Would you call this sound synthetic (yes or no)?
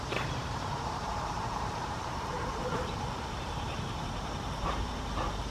yes